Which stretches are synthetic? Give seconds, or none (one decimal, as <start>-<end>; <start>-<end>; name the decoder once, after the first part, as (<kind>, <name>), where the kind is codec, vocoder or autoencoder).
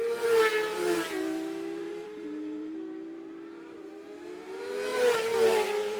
1.8-3.8 (vocoder, BigVGAN v2); 4.9-6.0